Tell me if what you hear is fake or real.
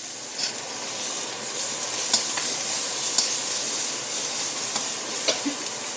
real